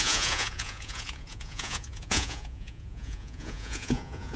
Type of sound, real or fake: fake